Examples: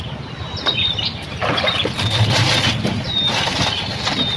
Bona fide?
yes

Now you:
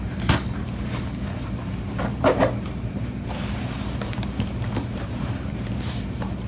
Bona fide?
no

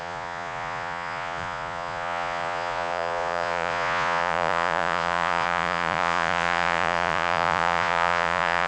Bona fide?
no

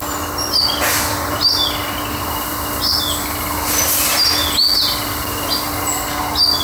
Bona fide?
yes